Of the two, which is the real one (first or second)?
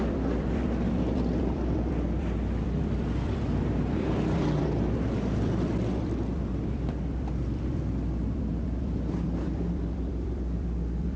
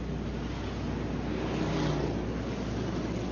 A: second